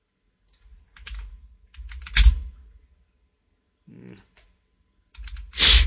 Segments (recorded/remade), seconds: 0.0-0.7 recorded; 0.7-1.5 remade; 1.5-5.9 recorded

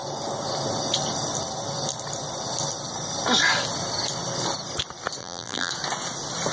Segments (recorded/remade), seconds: 0.0-5.2 recorded; 5.2-5.7 remade; 5.7-6.5 recorded

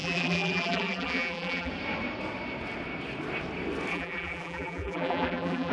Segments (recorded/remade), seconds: 0.0-1.7 remade; 1.7-3.9 recorded; 3.9-5.7 remade

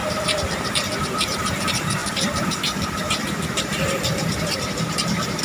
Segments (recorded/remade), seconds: 0.0-5.4 remade